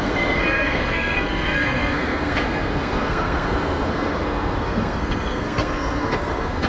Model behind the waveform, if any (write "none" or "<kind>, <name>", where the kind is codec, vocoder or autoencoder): codec, SNAC